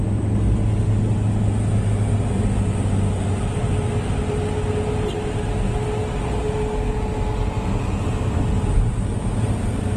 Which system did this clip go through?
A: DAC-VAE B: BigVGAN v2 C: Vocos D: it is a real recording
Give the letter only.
D